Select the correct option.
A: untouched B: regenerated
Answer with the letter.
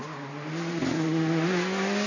A